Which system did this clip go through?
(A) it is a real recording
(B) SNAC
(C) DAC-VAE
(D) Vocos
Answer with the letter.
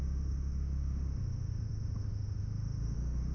C